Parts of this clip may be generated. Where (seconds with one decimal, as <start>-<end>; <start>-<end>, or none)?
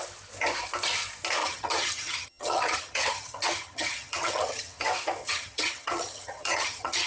1.4-4.8; 5.2-7.1